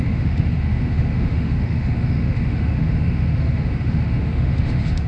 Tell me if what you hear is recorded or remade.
remade